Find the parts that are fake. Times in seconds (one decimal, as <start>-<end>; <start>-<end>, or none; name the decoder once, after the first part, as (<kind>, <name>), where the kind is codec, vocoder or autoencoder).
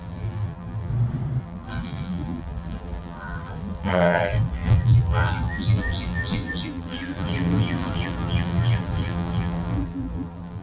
0.0-0.9 (vocoder, BigVGAN v2); 1.4-10.6